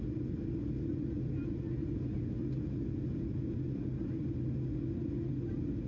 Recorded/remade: recorded